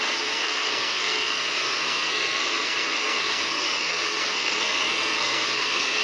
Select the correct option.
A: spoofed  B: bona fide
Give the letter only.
A